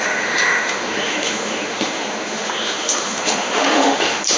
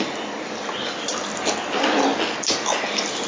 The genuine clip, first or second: second